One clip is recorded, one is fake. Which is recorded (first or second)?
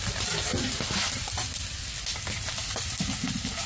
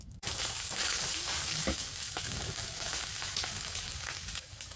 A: first